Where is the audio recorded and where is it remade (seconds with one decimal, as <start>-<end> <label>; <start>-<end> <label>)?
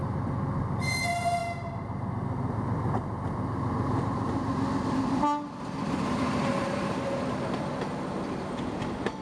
0.0-9.2 recorded